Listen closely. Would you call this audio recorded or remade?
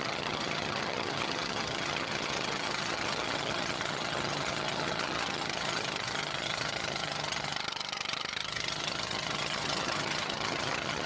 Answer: remade